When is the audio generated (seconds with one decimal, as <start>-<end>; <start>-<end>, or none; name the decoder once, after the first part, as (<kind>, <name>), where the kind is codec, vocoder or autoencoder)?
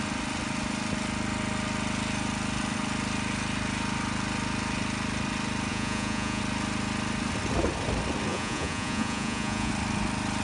5.7-6.4 (vocoder, Vocos); 8.3-9.7